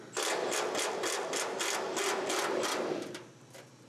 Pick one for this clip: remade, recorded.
recorded